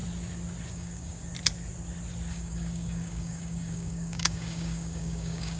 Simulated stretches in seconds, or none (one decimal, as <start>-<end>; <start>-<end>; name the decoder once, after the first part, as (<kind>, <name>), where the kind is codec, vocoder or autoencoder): 0.7-1.3 (codec, DAC); 2.3-5.6